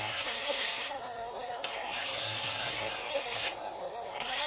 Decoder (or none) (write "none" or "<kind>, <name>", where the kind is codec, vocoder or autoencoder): codec, SNAC